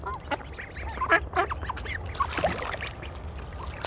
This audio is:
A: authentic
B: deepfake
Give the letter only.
A